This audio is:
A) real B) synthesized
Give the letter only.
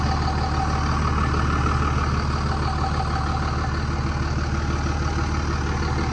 A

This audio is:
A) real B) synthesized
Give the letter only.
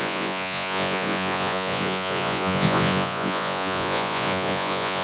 B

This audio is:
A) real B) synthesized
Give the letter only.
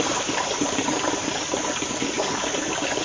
B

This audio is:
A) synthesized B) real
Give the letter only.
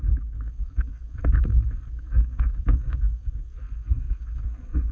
A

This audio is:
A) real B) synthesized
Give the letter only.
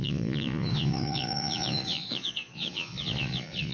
B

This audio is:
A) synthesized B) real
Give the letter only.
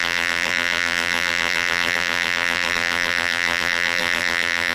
A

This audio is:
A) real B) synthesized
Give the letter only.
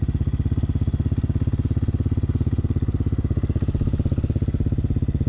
A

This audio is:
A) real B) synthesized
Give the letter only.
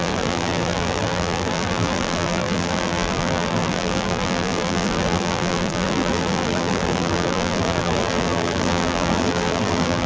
B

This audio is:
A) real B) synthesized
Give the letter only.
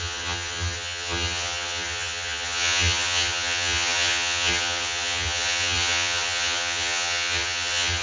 B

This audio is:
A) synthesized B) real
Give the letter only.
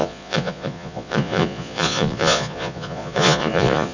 A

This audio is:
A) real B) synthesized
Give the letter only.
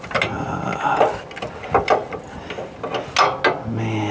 A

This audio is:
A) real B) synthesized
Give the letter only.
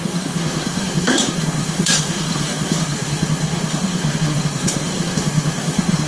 B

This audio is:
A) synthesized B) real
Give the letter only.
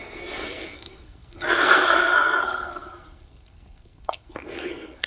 A